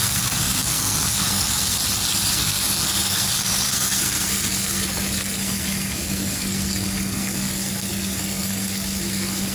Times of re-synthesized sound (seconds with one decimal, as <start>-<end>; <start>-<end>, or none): 0.0-1.8; 2.3-9.5